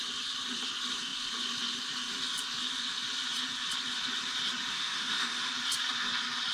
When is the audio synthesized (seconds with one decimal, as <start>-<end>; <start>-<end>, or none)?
4.7-5.5